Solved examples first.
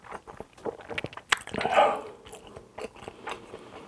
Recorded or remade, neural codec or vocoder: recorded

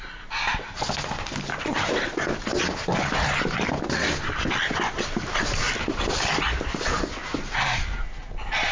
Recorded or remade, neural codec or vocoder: recorded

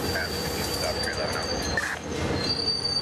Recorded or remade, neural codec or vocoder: recorded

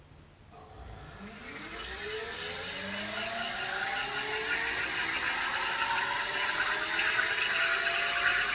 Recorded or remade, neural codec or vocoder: recorded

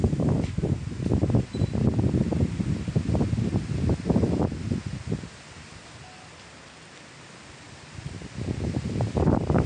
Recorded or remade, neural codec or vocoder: recorded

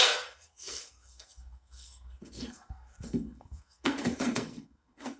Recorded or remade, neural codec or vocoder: remade, codec, SNAC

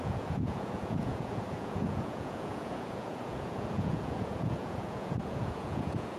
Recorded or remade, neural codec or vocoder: remade, vocoder, Vocos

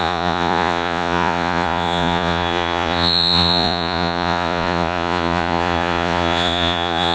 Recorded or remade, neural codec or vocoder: remade, vocoder, Vocos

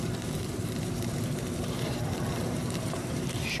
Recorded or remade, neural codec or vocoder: remade, vocoder, BigVGAN v2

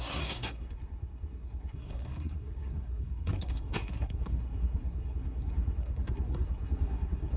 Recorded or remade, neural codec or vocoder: remade, codec, SNAC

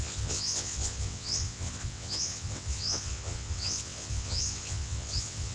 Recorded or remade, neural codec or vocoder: remade, vocoder, WaveNeXt